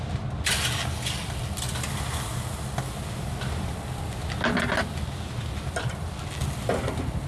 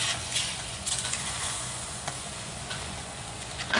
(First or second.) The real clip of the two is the first